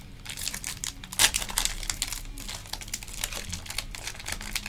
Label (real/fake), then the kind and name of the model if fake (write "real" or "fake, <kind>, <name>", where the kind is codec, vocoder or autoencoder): real